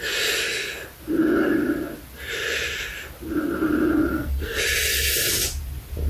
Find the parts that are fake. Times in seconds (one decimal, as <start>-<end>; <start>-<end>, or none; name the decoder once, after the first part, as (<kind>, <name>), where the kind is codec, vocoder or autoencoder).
4.1-4.6 (codec, SNAC)